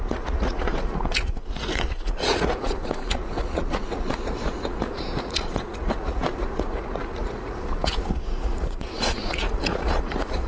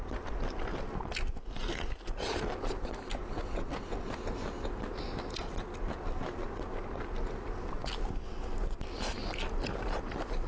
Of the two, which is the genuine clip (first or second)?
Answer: second